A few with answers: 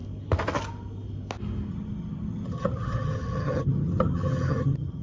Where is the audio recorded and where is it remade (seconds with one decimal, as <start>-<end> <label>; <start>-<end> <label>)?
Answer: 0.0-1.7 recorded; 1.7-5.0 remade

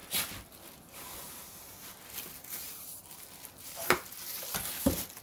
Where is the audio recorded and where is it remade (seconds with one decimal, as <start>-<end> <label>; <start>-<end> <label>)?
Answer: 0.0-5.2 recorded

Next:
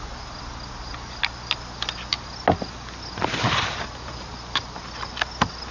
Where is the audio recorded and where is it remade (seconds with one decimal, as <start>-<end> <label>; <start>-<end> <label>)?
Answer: 0.0-5.7 recorded

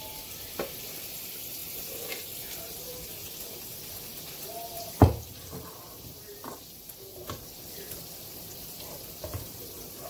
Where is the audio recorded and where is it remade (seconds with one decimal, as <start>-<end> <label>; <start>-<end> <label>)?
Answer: 0.0-10.1 remade

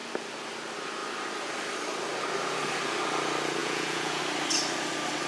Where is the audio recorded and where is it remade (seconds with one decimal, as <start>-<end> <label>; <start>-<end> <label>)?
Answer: 0.0-3.6 recorded; 3.6-4.2 remade; 4.2-5.3 recorded

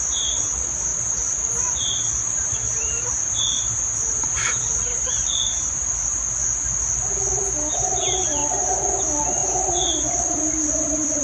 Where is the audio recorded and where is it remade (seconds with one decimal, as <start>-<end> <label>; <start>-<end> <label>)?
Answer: 0.0-6.4 remade; 6.4-7.8 recorded; 7.8-8.4 remade; 8.4-9.0 recorded; 9.0-9.4 remade; 9.4-10.0 recorded; 10.0-11.2 remade

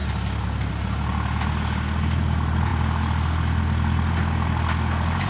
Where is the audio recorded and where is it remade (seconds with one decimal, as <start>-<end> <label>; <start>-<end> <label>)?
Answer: 0.0-5.3 recorded

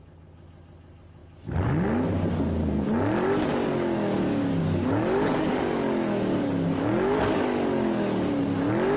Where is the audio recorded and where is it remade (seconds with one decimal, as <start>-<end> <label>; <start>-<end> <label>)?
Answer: 0.0-3.2 recorded; 3.2-8.4 remade; 8.4-9.0 recorded